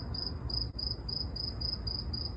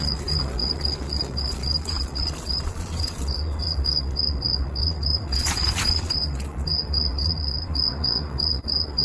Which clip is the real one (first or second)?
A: first